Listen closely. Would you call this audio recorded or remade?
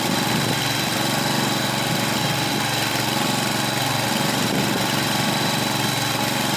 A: recorded